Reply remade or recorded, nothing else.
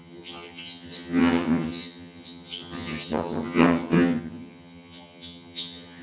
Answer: remade